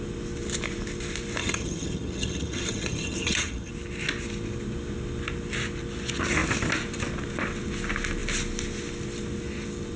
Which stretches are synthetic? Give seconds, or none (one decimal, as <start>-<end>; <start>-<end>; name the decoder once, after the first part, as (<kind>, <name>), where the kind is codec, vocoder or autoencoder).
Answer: 1.4-3.7 (vocoder, HiFi-GAN)